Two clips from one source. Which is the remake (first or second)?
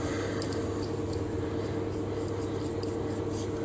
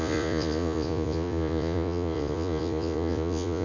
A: second